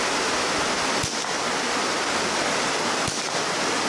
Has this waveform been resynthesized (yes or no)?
no